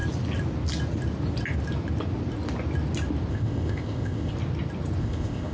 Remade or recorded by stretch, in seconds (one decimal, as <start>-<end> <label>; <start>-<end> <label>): 0.0-3.3 recorded; 3.3-4.3 remade; 4.3-5.0 recorded; 5.0-5.5 remade